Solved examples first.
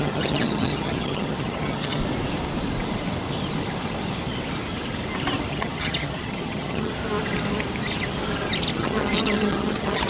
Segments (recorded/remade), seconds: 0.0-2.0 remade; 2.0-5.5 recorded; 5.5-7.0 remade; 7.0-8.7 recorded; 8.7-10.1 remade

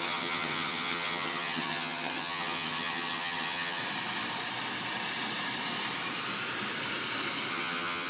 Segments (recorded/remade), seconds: 0.0-3.8 remade; 3.8-7.5 recorded; 7.5-8.1 remade

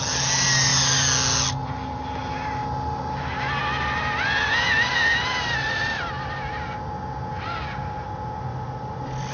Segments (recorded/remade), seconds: 0.0-9.3 recorded

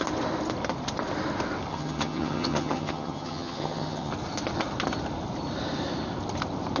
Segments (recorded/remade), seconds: 0.0-1.7 recorded; 1.7-4.1 remade; 4.1-6.8 recorded

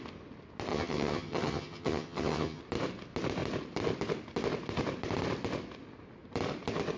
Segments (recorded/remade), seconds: 0.0-0.7 recorded; 0.7-2.6 remade; 2.6-7.0 recorded

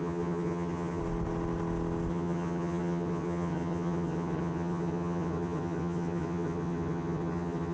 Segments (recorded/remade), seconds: 0.0-1.0 remade; 1.0-2.1 recorded; 2.1-7.7 remade

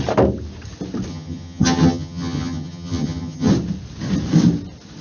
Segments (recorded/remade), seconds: 0.0-1.1 recorded; 1.1-3.5 remade; 3.5-5.0 recorded

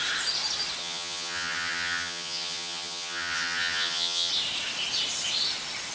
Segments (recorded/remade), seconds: 0.0-0.8 recorded; 0.8-4.3 remade; 4.3-5.9 recorded